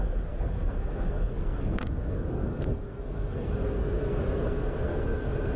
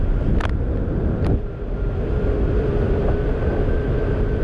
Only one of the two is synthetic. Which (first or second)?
first